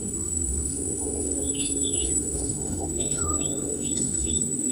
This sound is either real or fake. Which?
fake